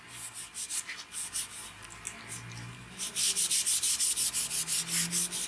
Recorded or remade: recorded